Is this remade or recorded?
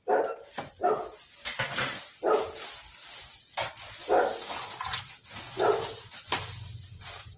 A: recorded